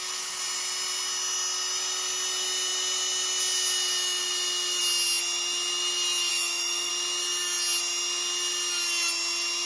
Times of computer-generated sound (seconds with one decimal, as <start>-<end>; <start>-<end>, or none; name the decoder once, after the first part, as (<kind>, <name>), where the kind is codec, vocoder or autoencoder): 6.3-6.9 (autoencoder, DAC-VAE)